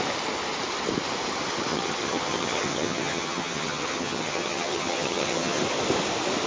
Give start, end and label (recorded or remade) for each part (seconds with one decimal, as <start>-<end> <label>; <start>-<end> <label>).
0.0-1.7 recorded; 1.7-5.6 remade; 5.6-6.5 recorded